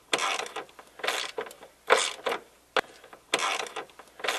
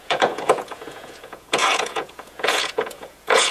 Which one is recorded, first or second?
first